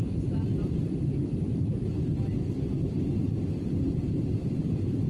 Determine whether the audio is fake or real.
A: real